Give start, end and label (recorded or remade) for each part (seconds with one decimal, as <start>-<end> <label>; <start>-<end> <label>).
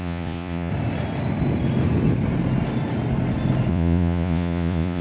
0.0-0.7 remade; 0.7-3.7 recorded; 3.7-5.0 remade